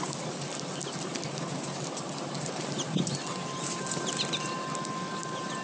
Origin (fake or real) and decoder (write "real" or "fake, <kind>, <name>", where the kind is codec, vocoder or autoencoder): real